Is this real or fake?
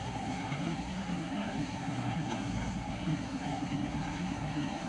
fake